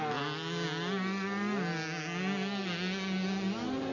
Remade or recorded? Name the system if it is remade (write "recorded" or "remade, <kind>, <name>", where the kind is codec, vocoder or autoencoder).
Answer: recorded